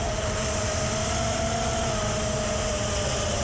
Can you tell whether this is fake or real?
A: real